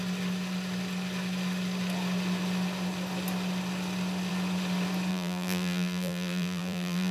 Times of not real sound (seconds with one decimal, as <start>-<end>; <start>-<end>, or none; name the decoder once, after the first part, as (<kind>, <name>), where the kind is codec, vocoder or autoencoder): 5.1-7.1 (vocoder, BigVGAN v2)